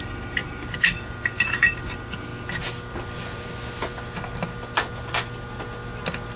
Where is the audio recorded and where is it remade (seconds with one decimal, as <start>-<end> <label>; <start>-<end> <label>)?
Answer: 0.0-2.3 remade; 2.3-6.4 recorded